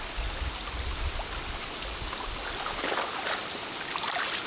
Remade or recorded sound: recorded